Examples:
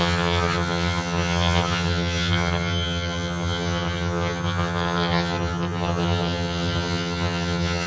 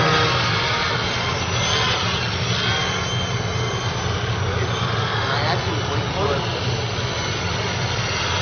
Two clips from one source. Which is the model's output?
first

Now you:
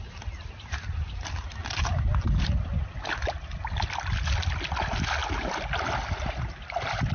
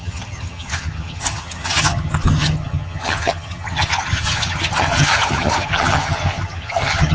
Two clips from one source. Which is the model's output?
second